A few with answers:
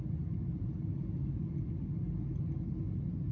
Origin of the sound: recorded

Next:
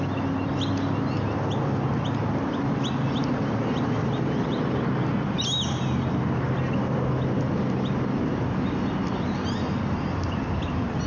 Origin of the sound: recorded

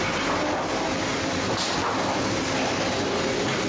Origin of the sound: recorded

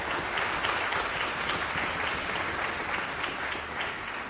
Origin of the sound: recorded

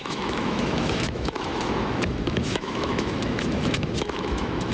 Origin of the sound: remade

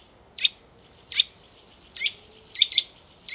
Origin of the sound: recorded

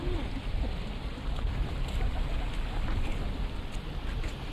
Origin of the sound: remade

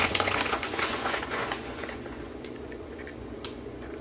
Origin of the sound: remade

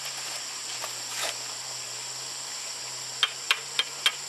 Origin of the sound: recorded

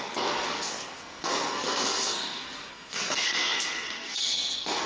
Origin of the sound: remade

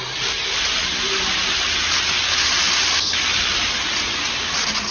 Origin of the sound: recorded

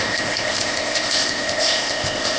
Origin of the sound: remade